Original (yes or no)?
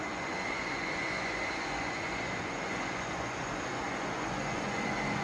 no